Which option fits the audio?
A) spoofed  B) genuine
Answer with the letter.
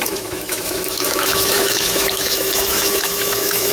A